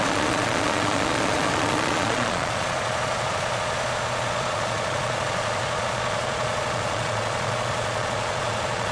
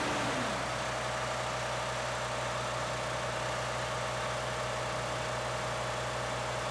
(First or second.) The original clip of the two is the second